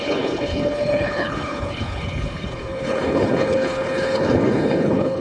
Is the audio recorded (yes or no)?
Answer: no